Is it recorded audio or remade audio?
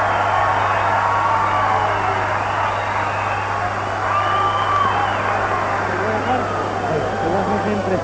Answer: recorded